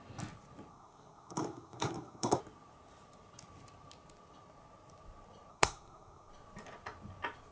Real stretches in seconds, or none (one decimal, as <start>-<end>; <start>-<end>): 0.0-0.7; 2.4-5.5; 6.3-7.5

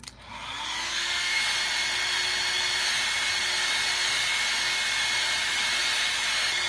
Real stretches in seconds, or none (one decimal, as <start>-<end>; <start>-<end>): 0.0-0.9; 1.4-6.7